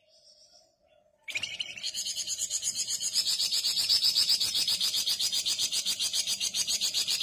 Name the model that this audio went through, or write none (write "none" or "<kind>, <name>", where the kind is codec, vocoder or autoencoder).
vocoder, BigVGAN v2